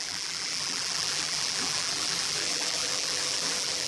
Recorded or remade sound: remade